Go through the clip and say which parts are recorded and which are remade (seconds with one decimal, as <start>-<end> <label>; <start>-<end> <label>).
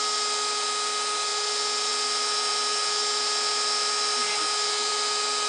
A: 0.0-5.5 recorded